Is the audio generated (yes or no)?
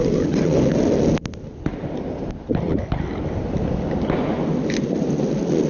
no